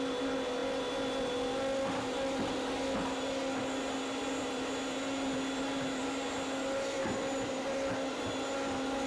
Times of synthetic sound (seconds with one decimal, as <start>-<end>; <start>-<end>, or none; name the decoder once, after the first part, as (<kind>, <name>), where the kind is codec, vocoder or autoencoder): 7.0-7.9 (vocoder, BigVGAN v2)